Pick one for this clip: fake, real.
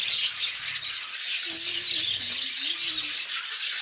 real